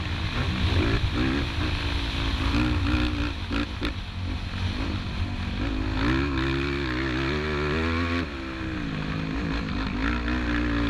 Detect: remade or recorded recorded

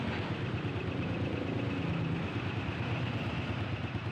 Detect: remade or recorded recorded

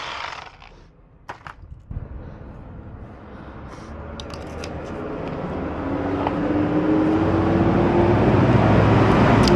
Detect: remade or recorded recorded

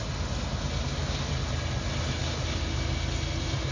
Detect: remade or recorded recorded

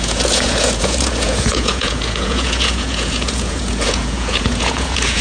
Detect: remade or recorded remade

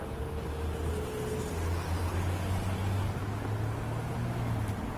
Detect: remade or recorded recorded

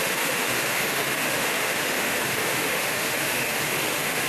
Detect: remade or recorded remade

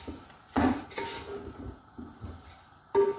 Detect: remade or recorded recorded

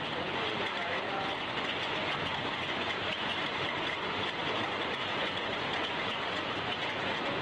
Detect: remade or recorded remade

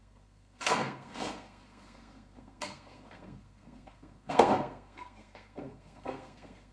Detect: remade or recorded remade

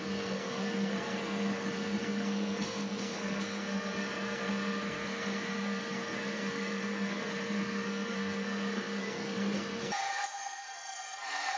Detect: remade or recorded remade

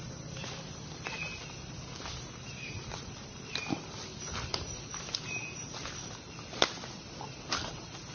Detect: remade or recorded recorded